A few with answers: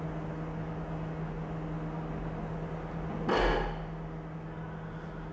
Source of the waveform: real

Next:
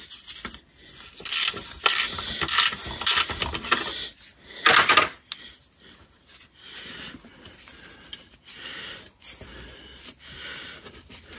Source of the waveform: real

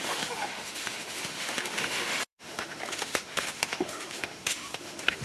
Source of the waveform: fake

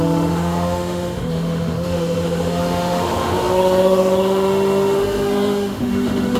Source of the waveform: fake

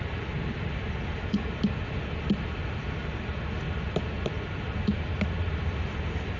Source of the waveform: real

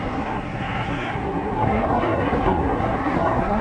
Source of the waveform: fake